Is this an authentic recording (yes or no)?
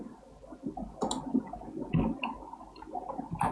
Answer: yes